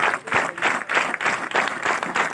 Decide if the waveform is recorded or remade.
recorded